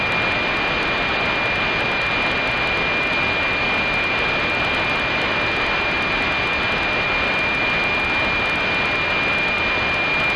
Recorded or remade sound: recorded